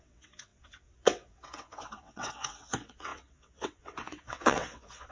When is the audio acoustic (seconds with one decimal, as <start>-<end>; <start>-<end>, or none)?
none